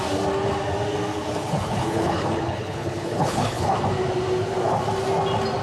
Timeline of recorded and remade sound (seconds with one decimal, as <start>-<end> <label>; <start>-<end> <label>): 0.0-1.1 recorded; 1.1-3.8 remade; 3.8-5.6 recorded